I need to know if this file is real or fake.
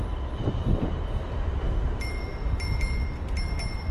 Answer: real